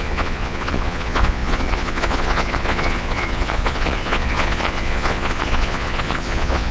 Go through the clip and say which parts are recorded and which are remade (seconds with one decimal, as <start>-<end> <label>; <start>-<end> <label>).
0.0-6.7 remade